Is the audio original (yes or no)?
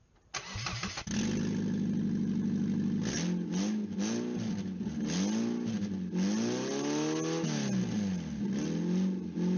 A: yes